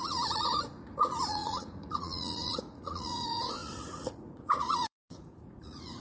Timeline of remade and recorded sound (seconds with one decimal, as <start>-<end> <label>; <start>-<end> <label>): 0.0-6.0 remade